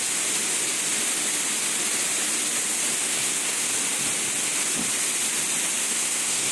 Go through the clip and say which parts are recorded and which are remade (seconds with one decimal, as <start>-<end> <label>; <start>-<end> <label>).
0.0-3.0 recorded; 3.0-3.7 remade; 3.7-5.8 recorded; 5.8-6.5 remade